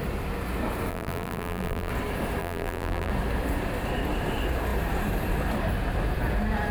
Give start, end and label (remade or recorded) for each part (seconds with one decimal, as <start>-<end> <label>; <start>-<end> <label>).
0.0-0.9 recorded; 0.9-1.9 remade; 1.9-2.4 recorded; 2.4-3.1 remade; 3.1-6.7 recorded